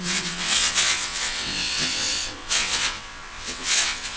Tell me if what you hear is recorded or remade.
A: remade